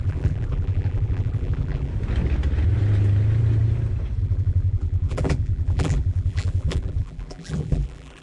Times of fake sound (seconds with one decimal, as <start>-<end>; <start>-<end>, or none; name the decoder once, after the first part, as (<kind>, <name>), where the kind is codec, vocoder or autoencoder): 0.0-1.9 (vocoder, BigVGAN v2); 4.2-8.2